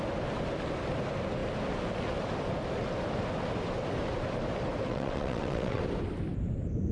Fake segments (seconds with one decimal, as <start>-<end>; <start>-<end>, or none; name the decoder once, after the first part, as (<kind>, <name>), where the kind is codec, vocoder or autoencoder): 4.9-5.8 (vocoder, WaveNeXt)